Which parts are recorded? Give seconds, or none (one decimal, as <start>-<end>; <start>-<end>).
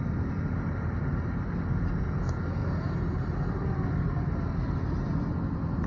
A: 0.0-5.9